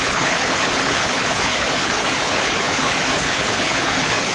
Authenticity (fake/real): fake